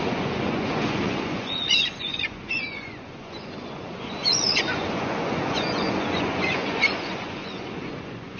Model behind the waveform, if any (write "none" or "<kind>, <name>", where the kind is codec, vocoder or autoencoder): vocoder, Vocos